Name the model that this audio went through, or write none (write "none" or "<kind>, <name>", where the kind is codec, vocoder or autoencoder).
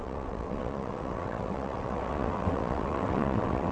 vocoder, WaveNeXt